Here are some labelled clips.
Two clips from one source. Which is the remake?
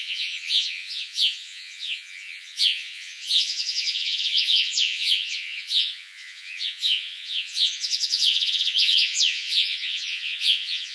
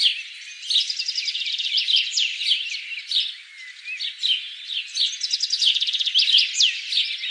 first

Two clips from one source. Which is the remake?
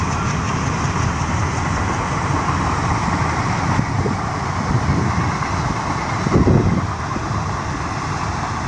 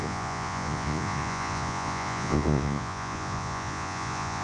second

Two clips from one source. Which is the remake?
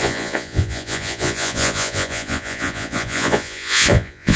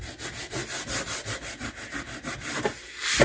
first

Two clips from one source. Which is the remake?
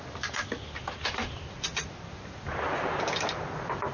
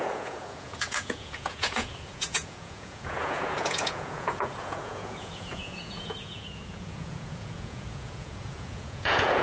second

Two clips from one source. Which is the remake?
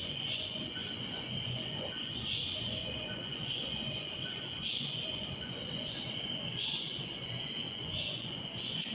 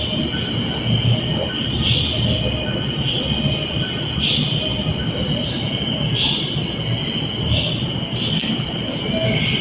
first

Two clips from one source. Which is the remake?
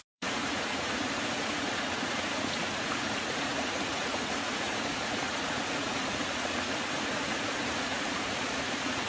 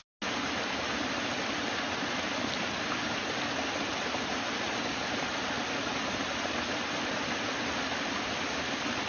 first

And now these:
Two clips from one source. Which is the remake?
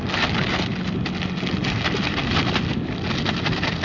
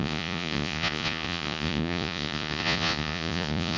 second